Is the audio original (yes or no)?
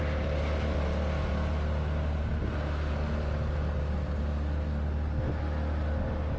yes